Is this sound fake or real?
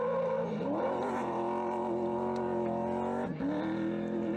real